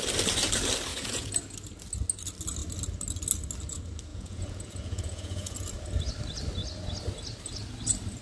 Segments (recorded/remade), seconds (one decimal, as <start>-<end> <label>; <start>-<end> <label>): 0.0-0.9 recorded; 0.9-1.4 remade; 1.4-4.1 recorded; 4.1-5.7 remade; 5.7-8.2 recorded